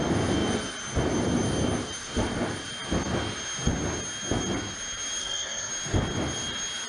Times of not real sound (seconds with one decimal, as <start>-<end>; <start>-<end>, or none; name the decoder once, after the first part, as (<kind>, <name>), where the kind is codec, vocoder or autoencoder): 5.2-5.7 (codec, SNAC)